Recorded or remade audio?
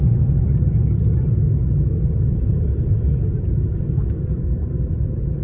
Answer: remade